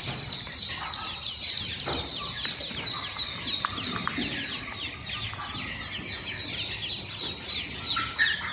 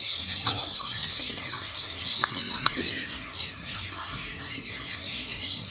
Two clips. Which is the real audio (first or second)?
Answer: first